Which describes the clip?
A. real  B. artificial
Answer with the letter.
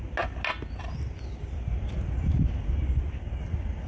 A